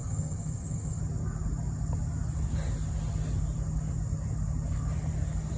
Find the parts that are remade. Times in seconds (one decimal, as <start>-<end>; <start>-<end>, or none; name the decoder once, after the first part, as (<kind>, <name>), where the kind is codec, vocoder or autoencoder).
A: 0.0-1.0 (vocoder, HiFi-GAN)